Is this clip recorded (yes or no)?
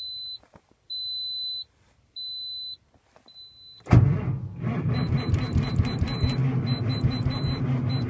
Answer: yes